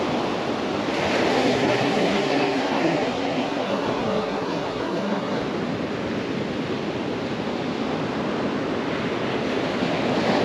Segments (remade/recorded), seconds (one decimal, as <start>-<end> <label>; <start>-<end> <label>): 0.0-1.3 recorded; 1.3-5.4 remade; 5.4-10.4 recorded